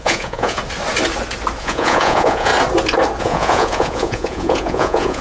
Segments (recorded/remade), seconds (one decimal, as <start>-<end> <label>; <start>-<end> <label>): 0.0-0.6 remade; 0.6-1.6 recorded; 1.6-2.5 remade; 2.5-3.2 recorded; 3.2-5.2 remade